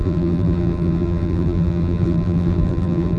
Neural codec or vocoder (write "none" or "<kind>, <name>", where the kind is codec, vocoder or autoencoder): vocoder, BigVGAN v2